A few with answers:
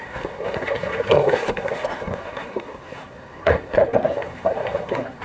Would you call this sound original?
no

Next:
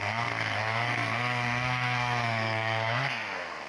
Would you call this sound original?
no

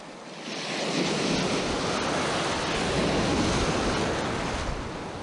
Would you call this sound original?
yes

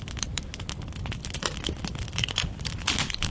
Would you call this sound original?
yes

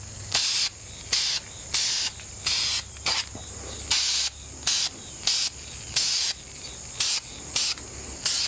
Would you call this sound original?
yes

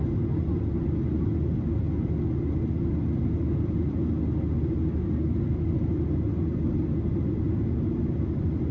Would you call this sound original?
yes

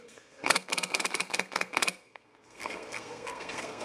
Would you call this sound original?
no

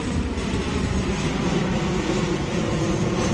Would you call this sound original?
yes